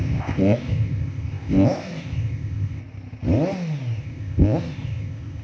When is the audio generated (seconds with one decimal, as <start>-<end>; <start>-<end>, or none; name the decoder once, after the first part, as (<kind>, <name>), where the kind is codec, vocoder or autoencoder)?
0.0-2.8 (codec, ZipCodec); 4.0-5.4